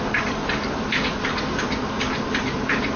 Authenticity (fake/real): real